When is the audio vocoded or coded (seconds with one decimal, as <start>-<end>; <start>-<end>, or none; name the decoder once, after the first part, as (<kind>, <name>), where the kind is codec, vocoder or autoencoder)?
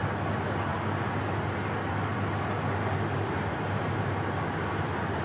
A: none